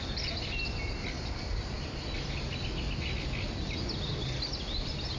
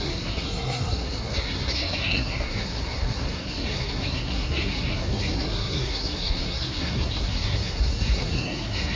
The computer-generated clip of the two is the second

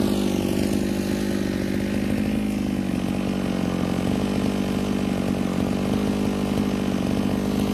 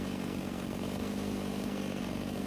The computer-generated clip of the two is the second